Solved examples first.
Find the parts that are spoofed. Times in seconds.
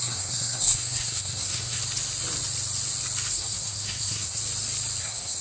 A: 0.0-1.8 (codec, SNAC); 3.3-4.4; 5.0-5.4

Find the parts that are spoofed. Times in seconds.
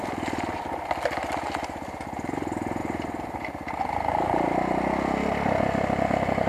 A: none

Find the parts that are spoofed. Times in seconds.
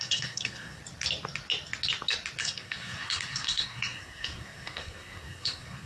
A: 0.0-0.8 (codec, SNAC); 2.4-5.9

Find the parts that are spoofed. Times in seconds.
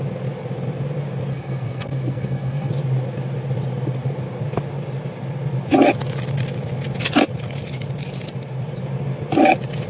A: 1.3-2.7 (codec, SNAC)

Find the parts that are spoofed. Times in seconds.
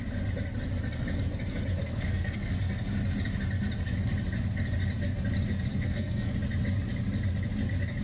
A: 1.8-2.5 (codec, SNAC); 5.7-6.3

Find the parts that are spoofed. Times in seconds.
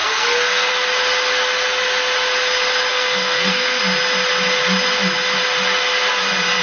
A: 0.0-0.7 (codec, SNAC); 2.9-3.8